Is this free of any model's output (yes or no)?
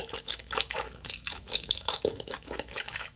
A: no